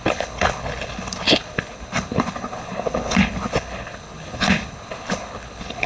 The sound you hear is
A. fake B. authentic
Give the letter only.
A